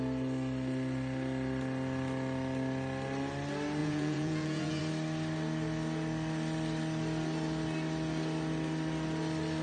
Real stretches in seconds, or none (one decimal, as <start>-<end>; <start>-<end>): 0.0-3.8; 4.8-9.6